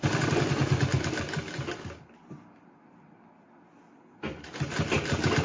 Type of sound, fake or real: real